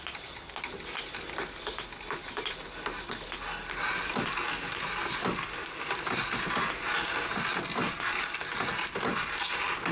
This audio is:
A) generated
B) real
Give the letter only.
B